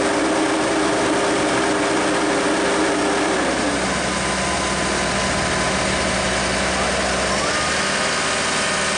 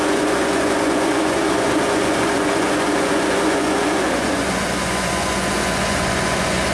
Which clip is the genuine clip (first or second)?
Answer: first